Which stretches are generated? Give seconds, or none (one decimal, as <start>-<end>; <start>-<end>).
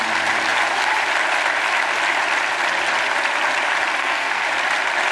4.0-4.5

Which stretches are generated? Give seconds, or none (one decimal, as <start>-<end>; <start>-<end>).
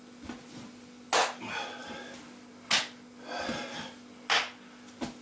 none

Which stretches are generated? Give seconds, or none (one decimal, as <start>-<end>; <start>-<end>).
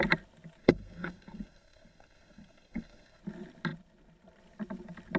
0.6-3.2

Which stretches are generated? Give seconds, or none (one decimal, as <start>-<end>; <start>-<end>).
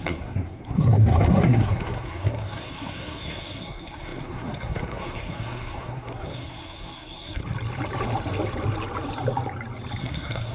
0.0-7.4; 10.0-10.5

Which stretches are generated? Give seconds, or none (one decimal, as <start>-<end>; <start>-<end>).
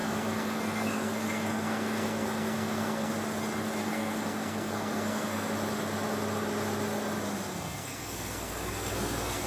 0.0-3.1; 3.8-5.5; 7.5-9.5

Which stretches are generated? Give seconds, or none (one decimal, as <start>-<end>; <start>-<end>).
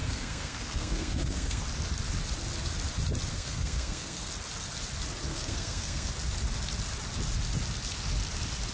0.0-1.6; 3.3-4.3; 5.3-6.1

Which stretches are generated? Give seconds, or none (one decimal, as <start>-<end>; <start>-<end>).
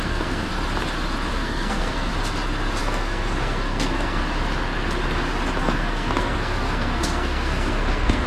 0.0-0.5; 1.3-2.1; 2.8-4.2; 5.6-8.3